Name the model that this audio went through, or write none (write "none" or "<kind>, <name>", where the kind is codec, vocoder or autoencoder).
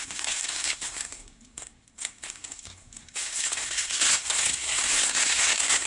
codec, SNAC